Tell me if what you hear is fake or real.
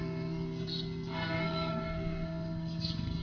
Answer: fake